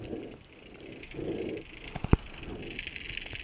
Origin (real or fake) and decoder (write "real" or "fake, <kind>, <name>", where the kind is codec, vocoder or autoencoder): real